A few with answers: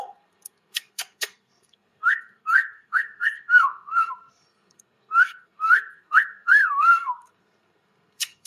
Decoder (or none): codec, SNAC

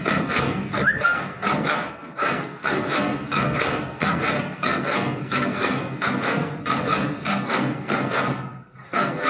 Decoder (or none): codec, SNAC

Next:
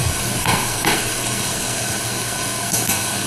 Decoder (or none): codec, SNAC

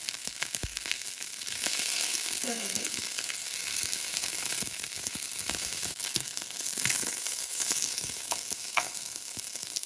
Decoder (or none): codec, SNAC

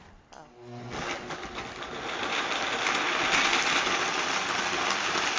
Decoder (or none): none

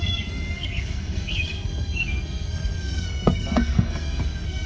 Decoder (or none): codec, SNAC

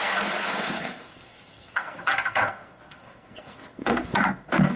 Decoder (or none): codec, SNAC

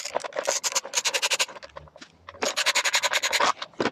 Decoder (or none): none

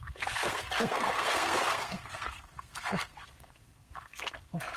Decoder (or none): codec, SNAC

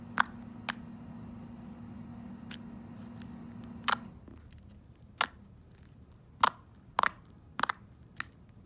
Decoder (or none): none